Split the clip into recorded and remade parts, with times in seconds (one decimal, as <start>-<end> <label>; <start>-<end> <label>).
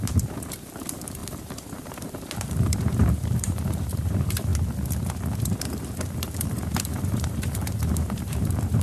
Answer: 0.0-4.5 remade; 4.5-5.6 recorded; 5.6-8.8 remade